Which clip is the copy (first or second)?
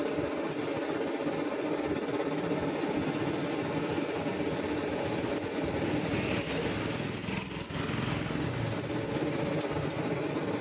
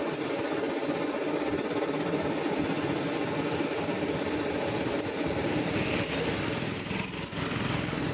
second